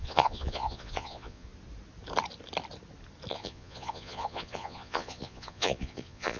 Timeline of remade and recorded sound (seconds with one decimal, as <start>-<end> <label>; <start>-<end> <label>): 0.0-1.5 remade; 1.5-3.3 recorded; 3.3-6.4 remade